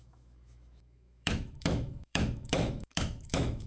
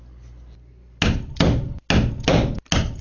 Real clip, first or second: second